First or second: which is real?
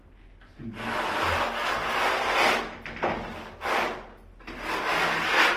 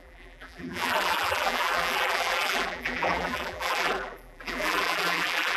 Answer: first